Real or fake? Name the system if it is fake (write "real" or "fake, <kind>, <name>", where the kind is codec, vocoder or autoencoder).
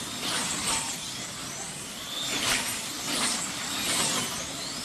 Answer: real